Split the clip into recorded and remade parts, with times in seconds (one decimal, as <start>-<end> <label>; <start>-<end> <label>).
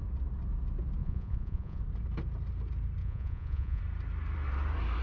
0.0-1.0 recorded; 1.0-1.8 remade; 1.8-3.0 recorded; 3.0-3.8 remade; 3.8-5.0 recorded